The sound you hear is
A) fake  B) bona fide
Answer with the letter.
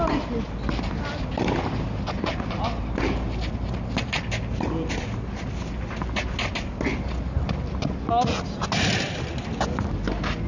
B